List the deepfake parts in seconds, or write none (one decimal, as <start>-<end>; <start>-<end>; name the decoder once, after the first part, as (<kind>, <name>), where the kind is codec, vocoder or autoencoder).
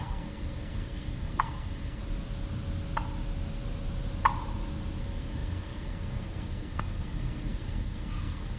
0.0-2.0 (codec, SNAC); 5.0-8.6